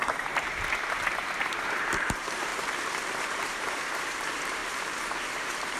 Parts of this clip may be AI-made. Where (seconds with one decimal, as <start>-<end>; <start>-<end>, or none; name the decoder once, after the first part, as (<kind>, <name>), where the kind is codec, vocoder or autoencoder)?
0.0-2.5 (vocoder, BigVGAN v2); 3.2-5.8